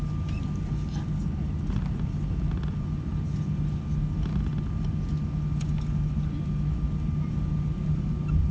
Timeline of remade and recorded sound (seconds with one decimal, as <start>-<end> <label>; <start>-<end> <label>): 0.0-8.5 recorded